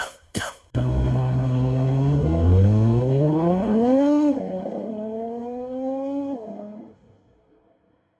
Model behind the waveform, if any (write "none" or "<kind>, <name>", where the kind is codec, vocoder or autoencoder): codec, SNAC